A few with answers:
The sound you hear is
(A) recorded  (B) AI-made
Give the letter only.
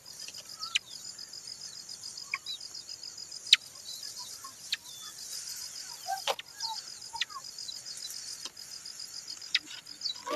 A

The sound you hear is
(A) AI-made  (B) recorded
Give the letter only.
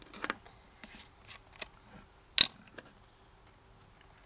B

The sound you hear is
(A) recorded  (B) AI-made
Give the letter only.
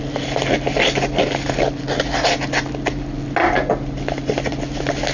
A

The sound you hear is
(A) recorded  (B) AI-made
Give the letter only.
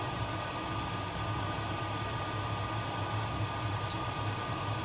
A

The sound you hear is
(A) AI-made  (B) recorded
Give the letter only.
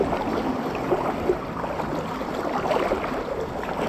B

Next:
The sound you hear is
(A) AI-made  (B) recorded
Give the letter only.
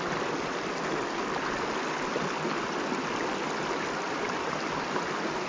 B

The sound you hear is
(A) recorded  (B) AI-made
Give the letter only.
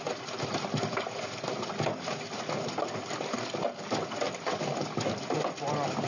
A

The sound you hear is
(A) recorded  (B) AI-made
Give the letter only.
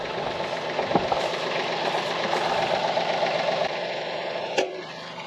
A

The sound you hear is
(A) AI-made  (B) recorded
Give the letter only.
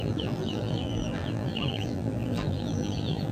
A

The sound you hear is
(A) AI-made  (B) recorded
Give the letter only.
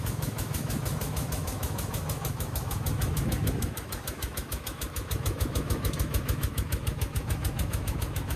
A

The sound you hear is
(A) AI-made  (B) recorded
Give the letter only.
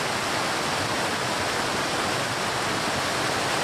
B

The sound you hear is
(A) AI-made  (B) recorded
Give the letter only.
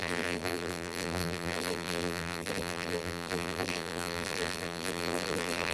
A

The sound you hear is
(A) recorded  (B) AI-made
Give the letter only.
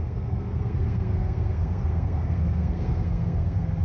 B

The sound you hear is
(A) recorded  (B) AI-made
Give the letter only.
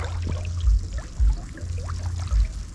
A